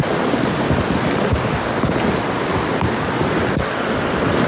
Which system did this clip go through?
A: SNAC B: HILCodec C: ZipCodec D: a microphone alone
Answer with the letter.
D